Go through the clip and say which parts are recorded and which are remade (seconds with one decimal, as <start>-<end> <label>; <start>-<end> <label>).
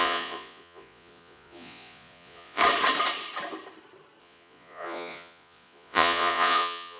0.0-2.6 remade; 2.6-4.2 recorded; 4.2-7.0 remade